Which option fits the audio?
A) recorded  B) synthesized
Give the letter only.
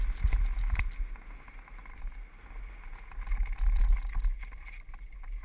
A